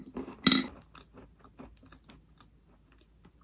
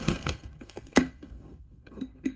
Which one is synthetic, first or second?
second